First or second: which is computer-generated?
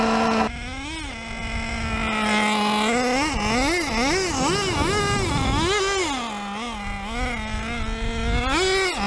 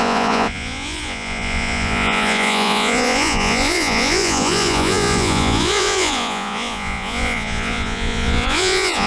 second